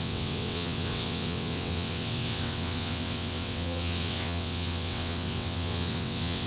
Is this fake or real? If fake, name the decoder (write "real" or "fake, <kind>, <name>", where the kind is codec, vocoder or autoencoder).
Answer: fake, vocoder, WaveNeXt